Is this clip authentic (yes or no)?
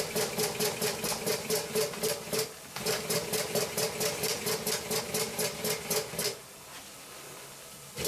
yes